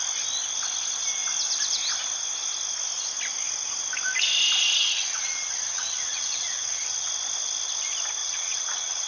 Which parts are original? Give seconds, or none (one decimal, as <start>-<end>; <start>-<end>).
0.0-4.8; 7.1-8.2